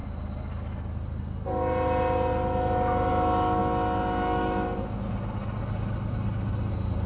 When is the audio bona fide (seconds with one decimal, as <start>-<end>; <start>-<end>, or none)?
0.0-7.1